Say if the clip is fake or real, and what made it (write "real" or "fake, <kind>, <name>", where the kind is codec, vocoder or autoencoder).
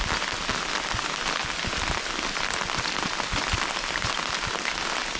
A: real